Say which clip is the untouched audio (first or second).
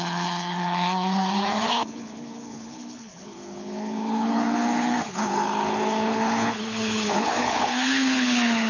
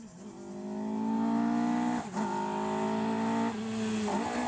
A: second